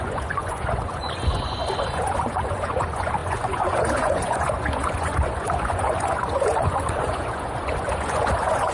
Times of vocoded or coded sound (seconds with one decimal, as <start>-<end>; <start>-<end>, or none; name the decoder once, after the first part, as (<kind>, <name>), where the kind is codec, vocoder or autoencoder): 0.0-8.7 (vocoder, Vocos)